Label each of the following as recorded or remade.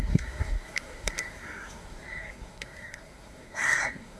remade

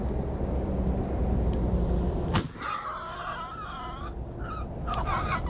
recorded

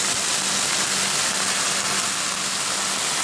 recorded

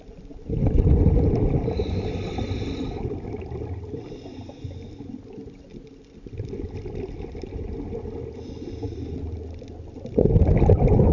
recorded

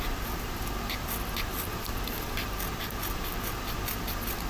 remade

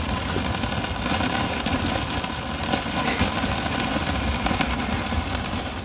recorded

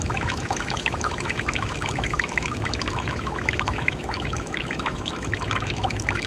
remade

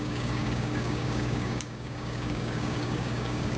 remade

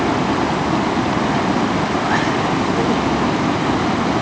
recorded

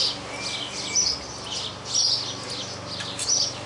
recorded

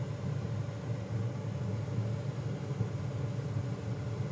recorded